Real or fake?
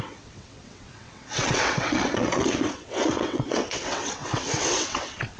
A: fake